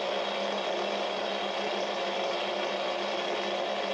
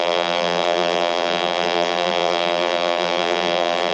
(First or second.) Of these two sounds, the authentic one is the first